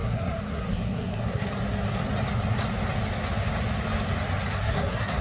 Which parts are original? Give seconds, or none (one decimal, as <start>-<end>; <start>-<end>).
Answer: 1.4-4.5